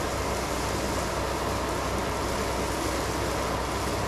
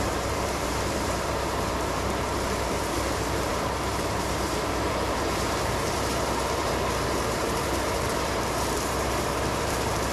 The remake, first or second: second